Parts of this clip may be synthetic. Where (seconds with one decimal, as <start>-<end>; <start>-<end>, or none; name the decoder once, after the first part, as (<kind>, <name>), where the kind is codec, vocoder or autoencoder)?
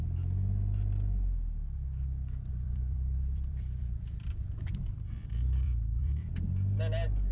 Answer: 2.5-6.3 (vocoder, BigVGAN v2)